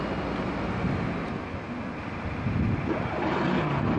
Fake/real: real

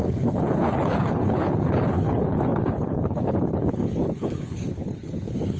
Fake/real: fake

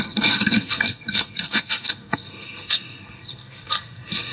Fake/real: fake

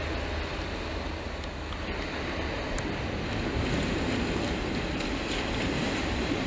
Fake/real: real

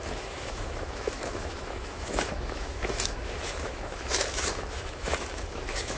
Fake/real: fake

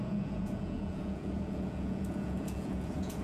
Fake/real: fake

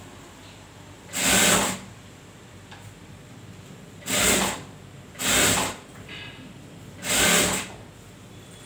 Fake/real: real